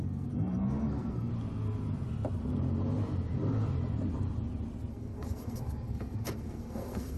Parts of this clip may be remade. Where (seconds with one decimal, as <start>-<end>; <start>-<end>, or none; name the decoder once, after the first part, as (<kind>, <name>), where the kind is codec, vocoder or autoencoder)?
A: 0.0-1.3 (codec, SNAC); 4.9-7.2